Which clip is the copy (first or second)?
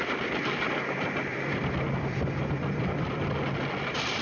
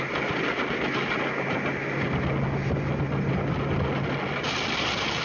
first